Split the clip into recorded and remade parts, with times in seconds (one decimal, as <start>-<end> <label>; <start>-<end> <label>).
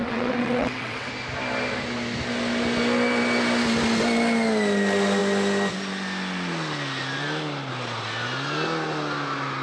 0.0-1.1 remade; 1.1-9.6 recorded